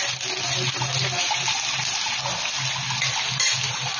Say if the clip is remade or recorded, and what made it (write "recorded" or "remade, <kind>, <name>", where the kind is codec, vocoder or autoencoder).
recorded